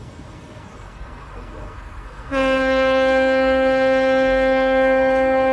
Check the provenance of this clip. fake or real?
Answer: fake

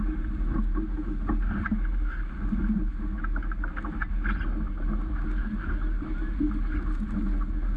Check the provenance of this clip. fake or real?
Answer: real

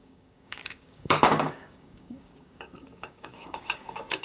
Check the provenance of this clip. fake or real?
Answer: fake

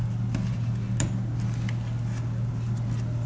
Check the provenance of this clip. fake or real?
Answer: real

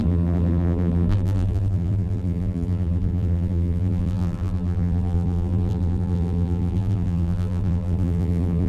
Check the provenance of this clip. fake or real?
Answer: fake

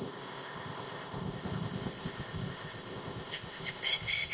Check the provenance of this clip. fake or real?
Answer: fake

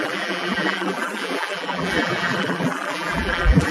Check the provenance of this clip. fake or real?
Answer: fake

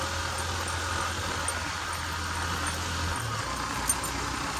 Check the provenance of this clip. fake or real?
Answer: real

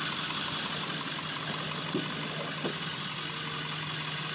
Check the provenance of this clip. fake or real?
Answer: real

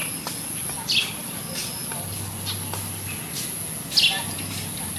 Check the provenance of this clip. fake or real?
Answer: real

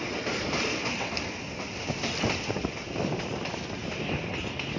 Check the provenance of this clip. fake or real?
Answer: real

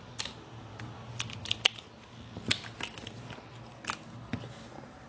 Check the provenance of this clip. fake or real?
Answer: real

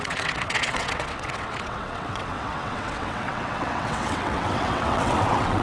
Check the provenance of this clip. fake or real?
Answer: fake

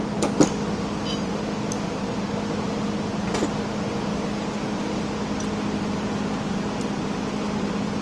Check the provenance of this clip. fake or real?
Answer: real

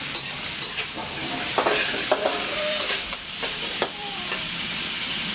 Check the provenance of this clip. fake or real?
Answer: fake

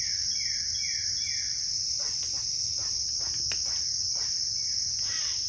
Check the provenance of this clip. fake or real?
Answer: real